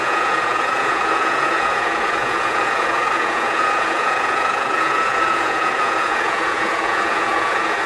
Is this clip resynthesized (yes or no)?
yes